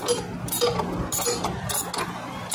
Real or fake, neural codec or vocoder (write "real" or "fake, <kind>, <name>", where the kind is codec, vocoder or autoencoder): real